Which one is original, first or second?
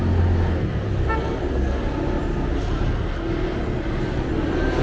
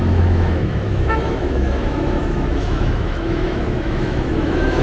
first